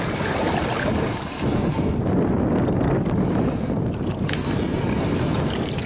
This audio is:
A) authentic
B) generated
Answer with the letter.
A